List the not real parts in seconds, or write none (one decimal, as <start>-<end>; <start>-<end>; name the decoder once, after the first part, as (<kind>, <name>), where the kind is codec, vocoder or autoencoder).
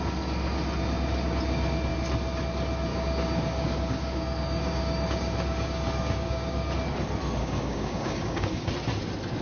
2.9-6.7 (codec, DAC); 7.4-8.7